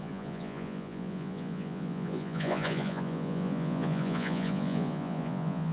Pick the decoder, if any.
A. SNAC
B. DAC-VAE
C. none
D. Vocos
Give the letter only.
D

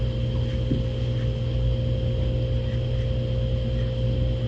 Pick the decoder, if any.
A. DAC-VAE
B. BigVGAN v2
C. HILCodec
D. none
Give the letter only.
D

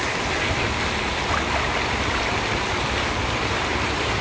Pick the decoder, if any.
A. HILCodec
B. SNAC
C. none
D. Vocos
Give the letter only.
C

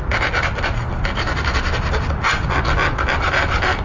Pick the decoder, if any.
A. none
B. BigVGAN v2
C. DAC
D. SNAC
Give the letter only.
A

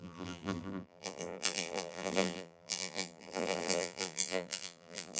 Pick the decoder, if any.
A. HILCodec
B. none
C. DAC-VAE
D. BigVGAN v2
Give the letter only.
D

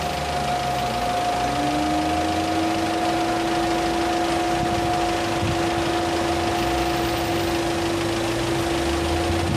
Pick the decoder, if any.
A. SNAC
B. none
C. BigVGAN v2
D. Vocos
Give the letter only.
B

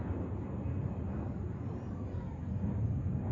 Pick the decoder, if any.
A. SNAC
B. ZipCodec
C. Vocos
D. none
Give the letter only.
D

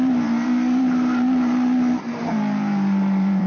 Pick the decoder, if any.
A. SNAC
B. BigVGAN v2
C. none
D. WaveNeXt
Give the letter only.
B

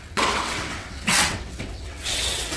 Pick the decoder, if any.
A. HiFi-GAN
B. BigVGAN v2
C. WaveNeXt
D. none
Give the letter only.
C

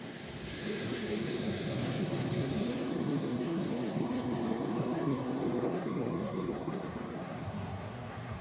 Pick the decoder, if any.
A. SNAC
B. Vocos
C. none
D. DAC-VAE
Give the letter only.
A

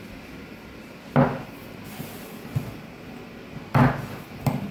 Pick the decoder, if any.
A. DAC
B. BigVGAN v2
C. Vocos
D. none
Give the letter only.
D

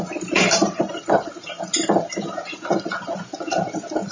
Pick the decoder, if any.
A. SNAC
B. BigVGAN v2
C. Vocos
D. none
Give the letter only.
B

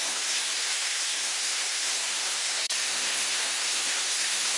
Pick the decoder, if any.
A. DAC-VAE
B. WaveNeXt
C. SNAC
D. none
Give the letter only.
C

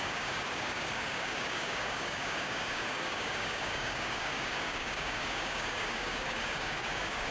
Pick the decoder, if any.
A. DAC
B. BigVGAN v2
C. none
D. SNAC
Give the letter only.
A